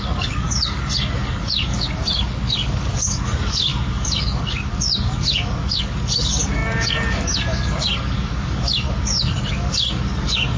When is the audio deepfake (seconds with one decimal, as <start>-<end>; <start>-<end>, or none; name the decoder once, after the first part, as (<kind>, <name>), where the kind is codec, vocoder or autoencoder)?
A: 0.0-10.6 (codec, DAC)